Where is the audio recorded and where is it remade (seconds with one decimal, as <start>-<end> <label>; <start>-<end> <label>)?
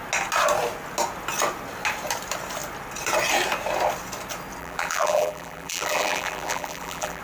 0.0-4.6 recorded; 4.6-7.2 remade